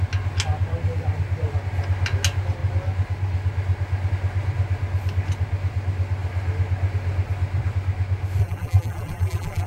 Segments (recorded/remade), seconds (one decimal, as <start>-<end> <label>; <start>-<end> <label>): 0.0-8.4 recorded; 8.4-9.7 remade